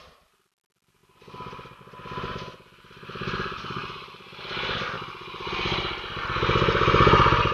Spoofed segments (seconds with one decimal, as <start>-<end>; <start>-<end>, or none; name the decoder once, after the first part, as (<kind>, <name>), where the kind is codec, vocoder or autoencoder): none